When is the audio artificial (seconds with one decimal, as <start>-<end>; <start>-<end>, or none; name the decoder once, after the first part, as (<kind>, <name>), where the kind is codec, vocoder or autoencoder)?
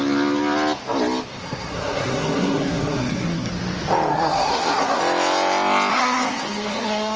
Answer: 1.4-3.5 (codec, SNAC); 4.1-5.0; 5.9-7.2